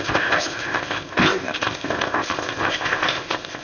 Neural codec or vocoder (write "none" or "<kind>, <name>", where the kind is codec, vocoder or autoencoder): codec, ZipCodec